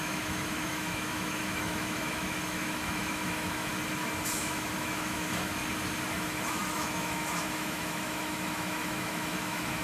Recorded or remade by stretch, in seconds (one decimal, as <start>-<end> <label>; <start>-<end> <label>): 0.0-3.7 remade; 3.7-4.4 recorded; 4.4-5.6 remade; 5.6-6.1 recorded; 6.1-9.8 remade